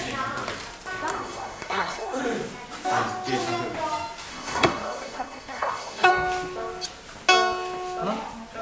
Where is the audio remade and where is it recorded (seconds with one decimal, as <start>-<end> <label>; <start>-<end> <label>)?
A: 0.0-1.1 recorded; 1.1-2.2 remade; 2.2-4.3 recorded; 4.3-6.1 remade; 6.1-8.6 recorded